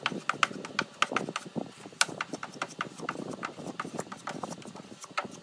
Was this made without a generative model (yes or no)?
yes